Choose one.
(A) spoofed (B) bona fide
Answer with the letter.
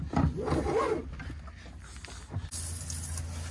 B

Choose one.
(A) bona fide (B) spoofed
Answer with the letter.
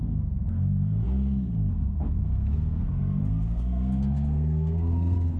B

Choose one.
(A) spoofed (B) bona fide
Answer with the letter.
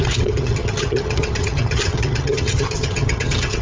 A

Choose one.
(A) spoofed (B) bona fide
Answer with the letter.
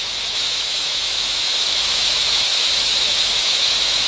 A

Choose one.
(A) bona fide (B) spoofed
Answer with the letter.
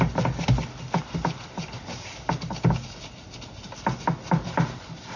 A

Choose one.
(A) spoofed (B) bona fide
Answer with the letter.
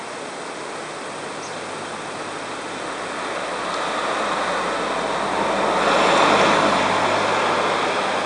B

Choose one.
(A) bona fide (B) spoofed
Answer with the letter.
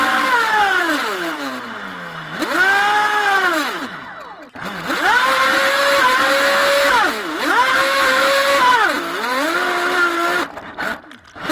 A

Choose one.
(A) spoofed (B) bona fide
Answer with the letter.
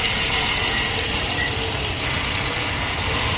B